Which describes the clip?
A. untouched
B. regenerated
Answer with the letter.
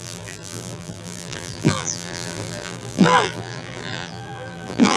B